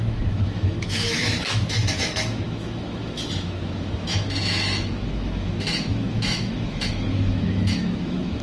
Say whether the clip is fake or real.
fake